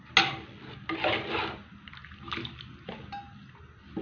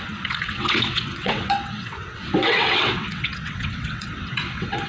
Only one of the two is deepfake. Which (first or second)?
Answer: second